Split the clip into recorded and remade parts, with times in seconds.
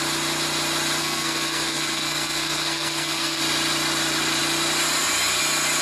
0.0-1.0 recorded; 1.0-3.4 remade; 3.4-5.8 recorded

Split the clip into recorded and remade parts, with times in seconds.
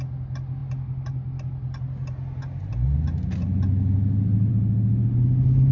0.0-5.7 recorded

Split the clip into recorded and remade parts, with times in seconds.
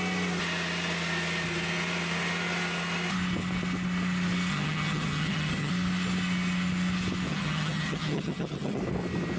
0.0-4.5 recorded; 4.5-5.7 remade; 5.7-7.3 recorded; 7.3-8.8 remade; 8.8-9.4 recorded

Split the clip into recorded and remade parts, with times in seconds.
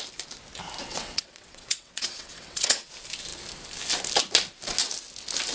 0.0-0.8 recorded; 0.8-2.9 remade; 2.9-5.5 recorded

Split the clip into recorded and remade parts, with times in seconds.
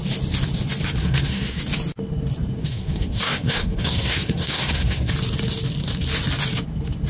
0.0-1.0 recorded; 1.0-1.6 remade; 1.6-2.6 recorded; 2.6-5.1 remade; 5.1-7.1 recorded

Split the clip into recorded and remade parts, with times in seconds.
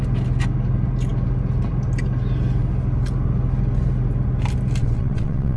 0.0-4.8 recorded; 4.8-5.6 remade